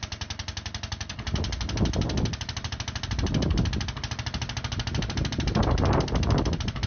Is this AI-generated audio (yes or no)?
no